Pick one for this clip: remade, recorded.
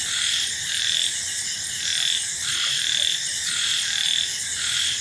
remade